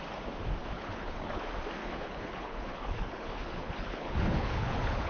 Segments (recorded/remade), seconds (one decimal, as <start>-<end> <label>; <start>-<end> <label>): 0.0-0.6 recorded; 0.6-1.4 remade; 1.4-1.8 recorded; 1.8-5.1 remade